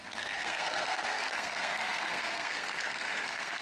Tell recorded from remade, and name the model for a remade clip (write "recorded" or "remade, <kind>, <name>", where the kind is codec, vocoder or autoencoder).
remade, codec, SNAC